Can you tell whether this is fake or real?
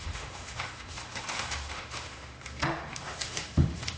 fake